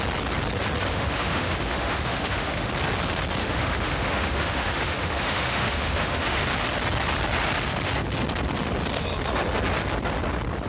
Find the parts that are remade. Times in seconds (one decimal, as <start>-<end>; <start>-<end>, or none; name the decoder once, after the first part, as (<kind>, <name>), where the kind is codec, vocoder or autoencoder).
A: 0.9-2.7 (autoencoder, DAC-VAE); 3.4-6.4